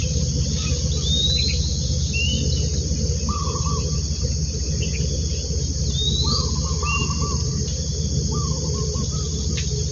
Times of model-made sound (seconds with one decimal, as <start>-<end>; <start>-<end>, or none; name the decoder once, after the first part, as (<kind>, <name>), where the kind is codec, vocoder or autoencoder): none